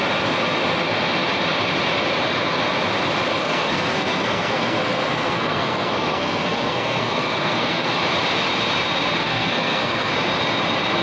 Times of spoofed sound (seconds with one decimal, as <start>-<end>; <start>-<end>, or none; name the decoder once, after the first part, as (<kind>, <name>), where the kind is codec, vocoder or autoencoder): 3.3-7.9 (codec, SNAC); 9.2-10.1